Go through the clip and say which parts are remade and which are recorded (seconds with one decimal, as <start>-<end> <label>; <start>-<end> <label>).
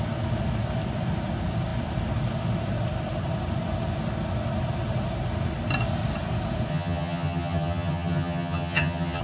0.0-6.7 recorded; 6.7-9.2 remade